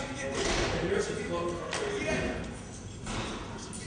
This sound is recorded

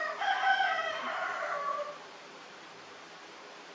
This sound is remade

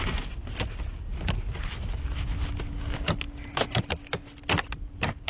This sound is recorded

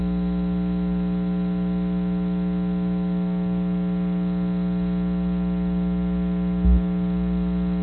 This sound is recorded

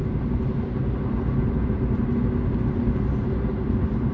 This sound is recorded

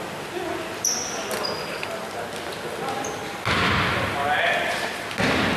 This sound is recorded